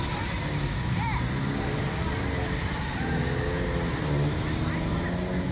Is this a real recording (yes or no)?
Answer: yes